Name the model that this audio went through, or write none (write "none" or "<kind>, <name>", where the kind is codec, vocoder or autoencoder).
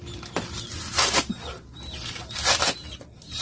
none